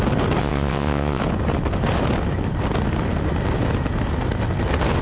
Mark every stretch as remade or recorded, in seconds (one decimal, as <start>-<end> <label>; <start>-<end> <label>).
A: 0.0-0.4 recorded; 0.4-1.2 remade; 1.2-5.0 recorded